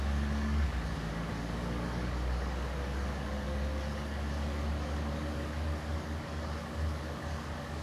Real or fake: fake